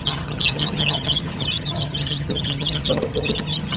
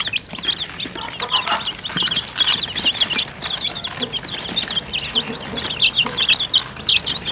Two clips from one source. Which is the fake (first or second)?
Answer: first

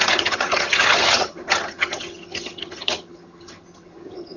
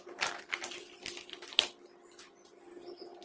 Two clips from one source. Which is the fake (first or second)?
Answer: first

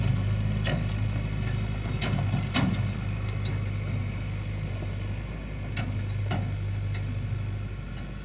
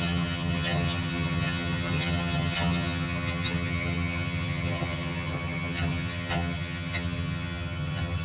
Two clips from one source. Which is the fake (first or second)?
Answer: second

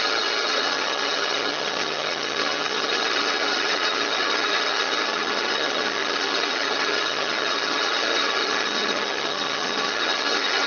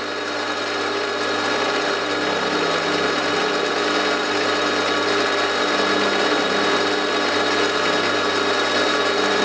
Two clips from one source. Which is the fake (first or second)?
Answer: first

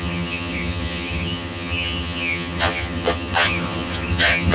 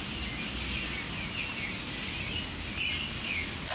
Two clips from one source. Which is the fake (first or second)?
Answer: first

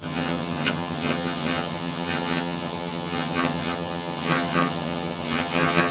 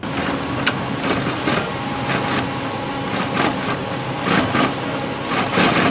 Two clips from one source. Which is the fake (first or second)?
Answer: first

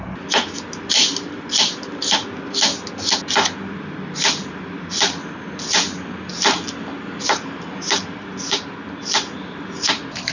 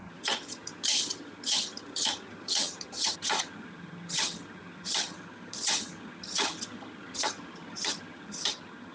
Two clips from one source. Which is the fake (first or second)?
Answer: second